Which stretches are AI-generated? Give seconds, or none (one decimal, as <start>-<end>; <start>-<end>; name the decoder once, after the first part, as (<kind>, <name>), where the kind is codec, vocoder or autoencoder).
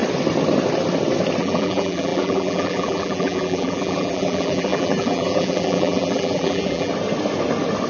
1.4-6.9 (vocoder, BigVGAN v2)